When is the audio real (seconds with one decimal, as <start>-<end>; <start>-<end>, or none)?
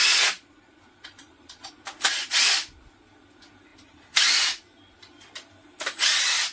1.7-6.5